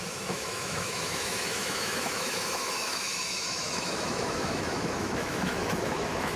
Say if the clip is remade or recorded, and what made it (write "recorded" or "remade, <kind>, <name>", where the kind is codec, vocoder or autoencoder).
remade, autoencoder, DAC-VAE